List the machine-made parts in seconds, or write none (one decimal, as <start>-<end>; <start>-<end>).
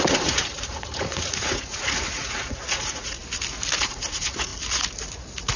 0.0-3.2; 3.8-4.5